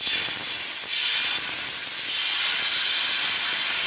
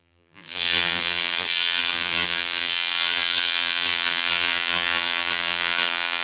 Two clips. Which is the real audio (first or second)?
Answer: first